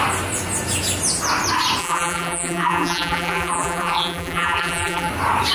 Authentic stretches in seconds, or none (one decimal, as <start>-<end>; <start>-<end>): 0.0-1.8; 5.1-5.5